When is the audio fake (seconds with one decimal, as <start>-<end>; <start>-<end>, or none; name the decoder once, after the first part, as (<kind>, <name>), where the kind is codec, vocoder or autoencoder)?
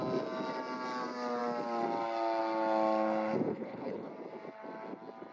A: 3.5-4.1 (codec, HILCodec)